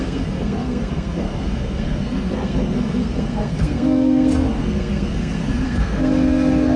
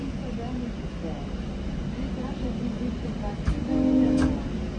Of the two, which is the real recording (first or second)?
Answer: second